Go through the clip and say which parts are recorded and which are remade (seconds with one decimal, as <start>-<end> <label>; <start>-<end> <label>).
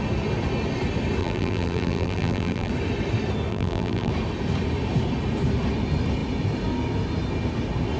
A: 0.0-1.2 recorded; 1.2-2.7 remade; 2.7-3.5 recorded; 3.5-4.1 remade; 4.1-8.0 recorded